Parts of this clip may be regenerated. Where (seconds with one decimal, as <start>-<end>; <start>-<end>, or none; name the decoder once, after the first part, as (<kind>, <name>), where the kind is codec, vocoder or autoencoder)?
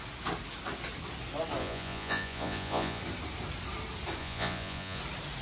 1.6-3.0 (vocoder, Vocos); 4.2-5.0